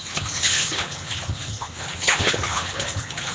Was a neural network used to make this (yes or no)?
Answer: yes